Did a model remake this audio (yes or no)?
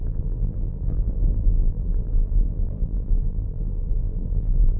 yes